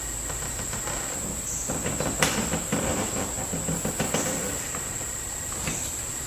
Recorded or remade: remade